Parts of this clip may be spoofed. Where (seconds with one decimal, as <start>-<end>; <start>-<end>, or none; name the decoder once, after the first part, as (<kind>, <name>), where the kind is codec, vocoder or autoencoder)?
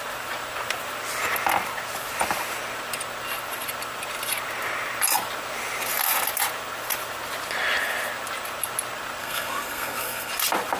9.2-10.3 (codec, SNAC)